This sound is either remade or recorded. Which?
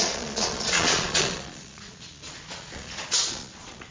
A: remade